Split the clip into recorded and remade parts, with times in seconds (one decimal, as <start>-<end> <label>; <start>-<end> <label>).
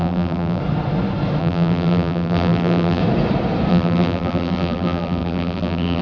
0.0-0.6 remade; 0.6-1.4 recorded; 1.4-3.0 remade; 3.0-3.7 recorded; 3.7-6.0 remade